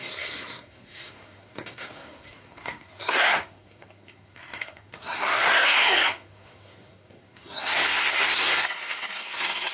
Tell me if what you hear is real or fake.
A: fake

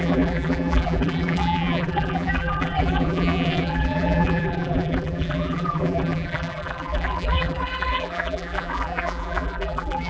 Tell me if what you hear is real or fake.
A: fake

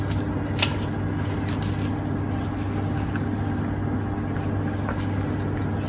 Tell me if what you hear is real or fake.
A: real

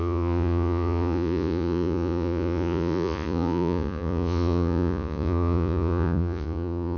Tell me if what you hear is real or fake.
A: fake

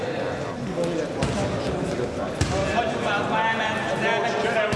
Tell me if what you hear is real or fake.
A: real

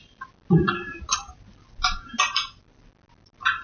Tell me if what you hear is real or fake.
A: real